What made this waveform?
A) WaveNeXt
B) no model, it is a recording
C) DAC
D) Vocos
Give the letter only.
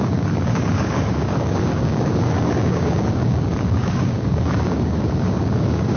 C